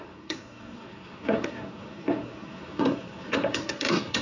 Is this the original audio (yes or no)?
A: no